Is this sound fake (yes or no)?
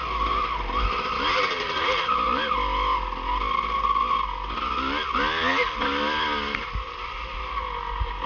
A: no